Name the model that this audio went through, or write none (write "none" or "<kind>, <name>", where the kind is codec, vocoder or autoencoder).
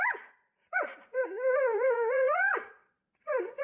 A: vocoder, Vocos